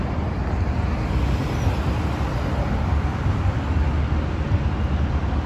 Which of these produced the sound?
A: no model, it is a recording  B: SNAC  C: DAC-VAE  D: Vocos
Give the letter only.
A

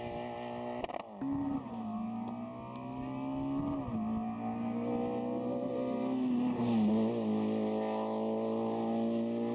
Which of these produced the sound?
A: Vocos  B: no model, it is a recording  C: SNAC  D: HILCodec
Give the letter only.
B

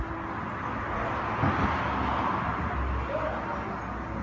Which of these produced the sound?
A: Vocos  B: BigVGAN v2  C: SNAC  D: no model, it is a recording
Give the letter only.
D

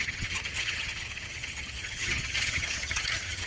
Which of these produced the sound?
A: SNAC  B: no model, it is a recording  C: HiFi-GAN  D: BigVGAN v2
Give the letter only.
C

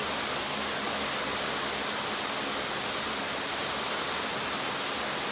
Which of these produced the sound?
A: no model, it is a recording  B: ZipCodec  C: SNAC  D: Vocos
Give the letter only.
A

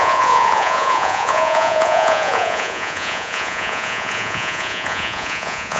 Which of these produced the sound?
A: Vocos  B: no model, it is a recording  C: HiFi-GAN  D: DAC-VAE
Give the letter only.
A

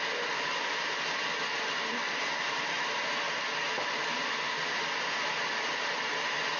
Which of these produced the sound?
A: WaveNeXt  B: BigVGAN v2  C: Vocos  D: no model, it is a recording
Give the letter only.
D